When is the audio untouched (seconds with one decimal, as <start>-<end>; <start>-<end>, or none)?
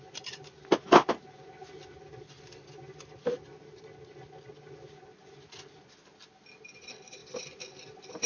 0.0-8.3